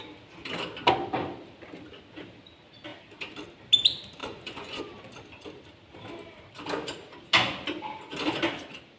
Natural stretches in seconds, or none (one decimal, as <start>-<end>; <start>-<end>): 0.0-4.2; 4.8-9.0